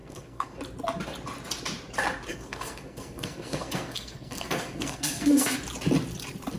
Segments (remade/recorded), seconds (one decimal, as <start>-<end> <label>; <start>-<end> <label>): 0.0-0.6 remade; 0.6-2.3 recorded; 2.3-5.6 remade; 5.6-6.6 recorded